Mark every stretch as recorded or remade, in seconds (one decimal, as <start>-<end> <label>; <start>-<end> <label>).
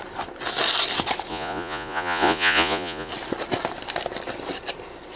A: 0.0-1.3 recorded; 1.3-3.1 remade; 3.1-5.2 recorded